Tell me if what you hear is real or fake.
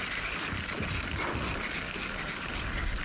real